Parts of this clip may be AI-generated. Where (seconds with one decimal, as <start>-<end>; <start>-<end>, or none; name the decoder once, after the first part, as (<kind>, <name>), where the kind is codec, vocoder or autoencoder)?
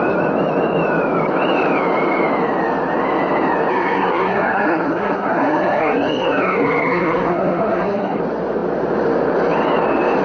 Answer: 3.7-8.2 (codec, SNAC)